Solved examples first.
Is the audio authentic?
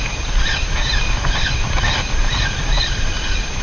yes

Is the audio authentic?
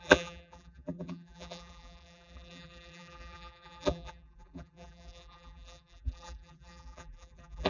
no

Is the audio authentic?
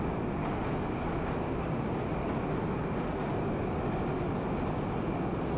yes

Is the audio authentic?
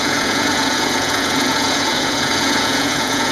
no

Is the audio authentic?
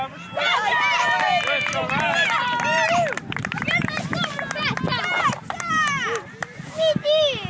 yes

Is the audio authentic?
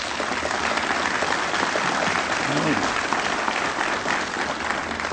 yes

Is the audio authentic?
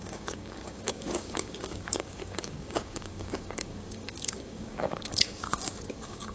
no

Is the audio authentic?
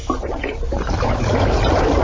no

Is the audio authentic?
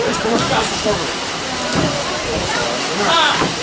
yes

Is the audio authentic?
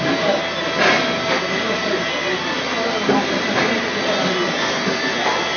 yes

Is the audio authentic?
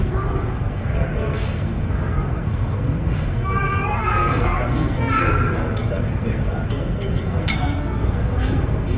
no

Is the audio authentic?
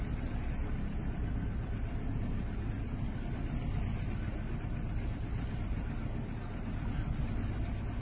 yes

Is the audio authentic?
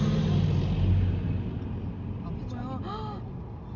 yes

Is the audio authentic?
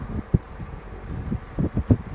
yes